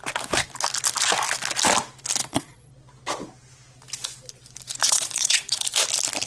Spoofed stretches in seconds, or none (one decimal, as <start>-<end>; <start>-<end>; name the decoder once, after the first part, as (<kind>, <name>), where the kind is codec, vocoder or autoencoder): 2.2-2.7 (vocoder, Vocos); 4.8-5.6